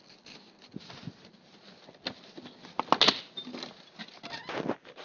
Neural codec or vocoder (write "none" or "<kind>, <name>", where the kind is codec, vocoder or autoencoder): none